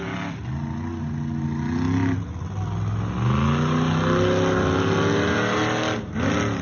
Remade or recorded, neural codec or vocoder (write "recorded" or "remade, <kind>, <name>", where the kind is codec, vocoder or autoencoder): recorded